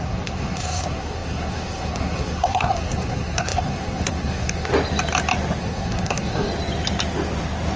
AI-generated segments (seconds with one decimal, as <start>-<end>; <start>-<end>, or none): 0.0-4.7; 5.6-6.5